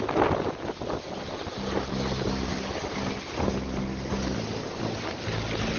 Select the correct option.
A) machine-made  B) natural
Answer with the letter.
B